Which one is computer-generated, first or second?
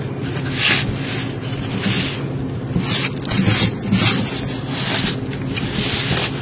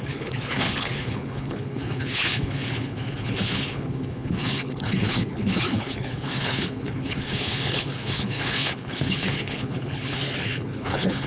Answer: second